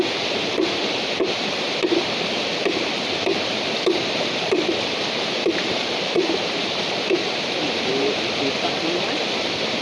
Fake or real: fake